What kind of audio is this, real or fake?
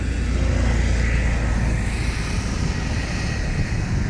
real